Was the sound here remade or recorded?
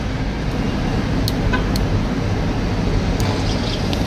recorded